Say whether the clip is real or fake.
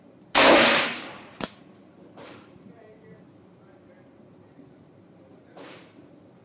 fake